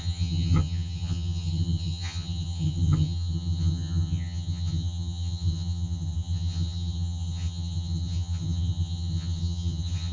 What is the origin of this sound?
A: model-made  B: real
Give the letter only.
A